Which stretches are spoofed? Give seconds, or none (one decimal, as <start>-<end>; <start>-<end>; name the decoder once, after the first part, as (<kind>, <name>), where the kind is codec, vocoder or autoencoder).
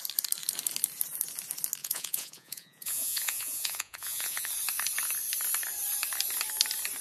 1.8-4.5 (vocoder, Vocos)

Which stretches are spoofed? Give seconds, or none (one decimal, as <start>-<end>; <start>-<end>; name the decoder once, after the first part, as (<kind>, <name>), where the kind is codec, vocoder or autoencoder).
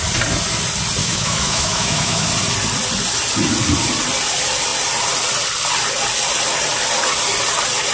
1.0-2.3 (autoencoder, DAC-VAE)